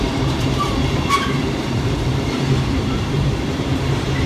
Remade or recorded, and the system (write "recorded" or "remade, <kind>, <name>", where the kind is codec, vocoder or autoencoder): remade, vocoder, BigVGAN v2